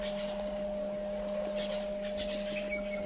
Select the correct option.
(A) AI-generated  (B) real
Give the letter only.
B